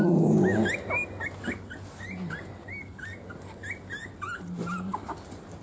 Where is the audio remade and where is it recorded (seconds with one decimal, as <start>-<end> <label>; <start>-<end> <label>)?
0.0-5.6 recorded